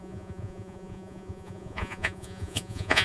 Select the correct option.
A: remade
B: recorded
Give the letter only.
A